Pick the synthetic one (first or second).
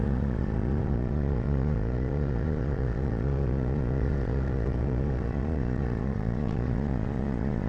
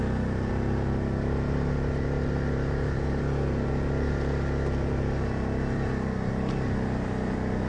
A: first